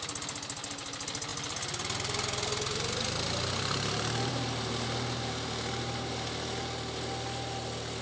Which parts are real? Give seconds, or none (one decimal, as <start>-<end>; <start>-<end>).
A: 0.0-8.0